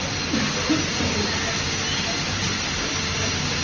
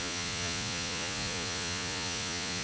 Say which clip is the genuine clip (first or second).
first